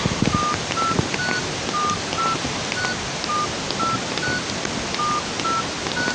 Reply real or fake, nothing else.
real